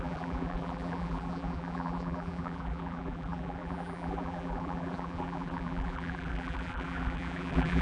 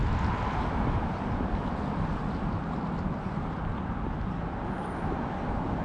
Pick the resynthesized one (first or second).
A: first